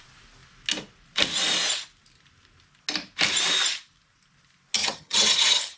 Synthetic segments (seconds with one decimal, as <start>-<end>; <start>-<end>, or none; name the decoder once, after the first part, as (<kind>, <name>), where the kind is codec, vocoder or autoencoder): 4.8-5.8 (vocoder, HiFi-GAN)